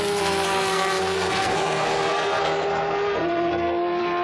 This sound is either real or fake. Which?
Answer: fake